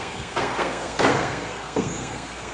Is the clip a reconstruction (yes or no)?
yes